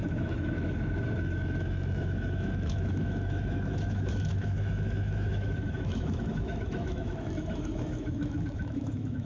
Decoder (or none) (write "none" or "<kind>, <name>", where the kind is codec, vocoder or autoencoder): autoencoder, DAC-VAE